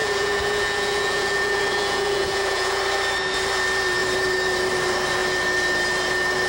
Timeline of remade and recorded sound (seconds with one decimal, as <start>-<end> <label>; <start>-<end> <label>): 0.0-2.8 remade; 2.8-6.5 recorded